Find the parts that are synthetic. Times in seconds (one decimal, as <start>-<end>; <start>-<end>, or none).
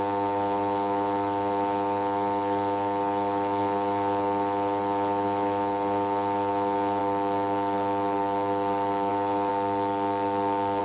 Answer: 0.0-10.8